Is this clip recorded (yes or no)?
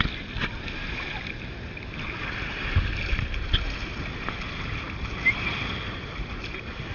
yes